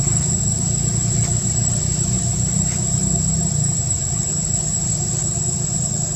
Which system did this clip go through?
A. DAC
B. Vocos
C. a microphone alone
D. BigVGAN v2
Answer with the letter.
D